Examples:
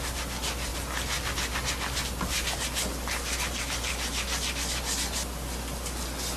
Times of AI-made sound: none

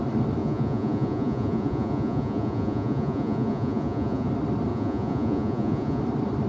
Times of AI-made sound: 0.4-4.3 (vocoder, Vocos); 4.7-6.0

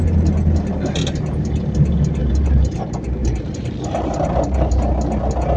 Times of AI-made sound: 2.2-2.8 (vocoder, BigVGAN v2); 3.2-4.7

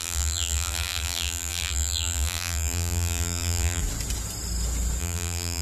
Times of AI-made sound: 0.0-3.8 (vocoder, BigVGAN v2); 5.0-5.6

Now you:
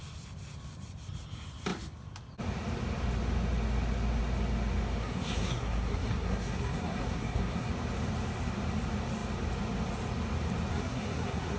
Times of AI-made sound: 5.0-7.7 (codec, SNAC); 10.7-11.6